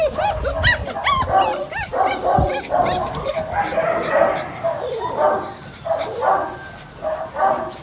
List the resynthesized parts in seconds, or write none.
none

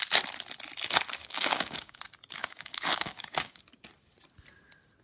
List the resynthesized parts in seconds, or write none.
1.2-2.0 (codec, DAC); 2.4-3.6